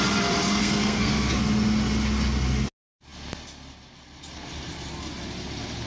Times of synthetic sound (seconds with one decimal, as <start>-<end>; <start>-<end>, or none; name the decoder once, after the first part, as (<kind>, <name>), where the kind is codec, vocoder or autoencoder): 0.6-1.3 (codec, SNAC)